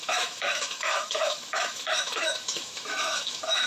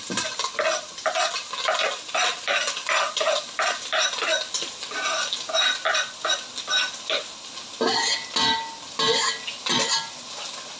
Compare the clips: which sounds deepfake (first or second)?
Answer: first